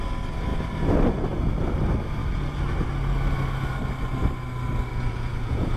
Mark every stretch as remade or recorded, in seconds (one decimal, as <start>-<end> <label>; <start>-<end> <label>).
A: 0.0-4.9 recorded; 4.9-5.8 remade